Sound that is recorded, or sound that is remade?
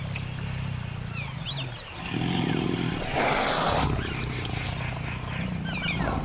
recorded